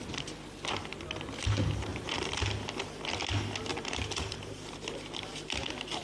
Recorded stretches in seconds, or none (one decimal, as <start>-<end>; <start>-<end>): 0.0-1.9; 3.2-3.7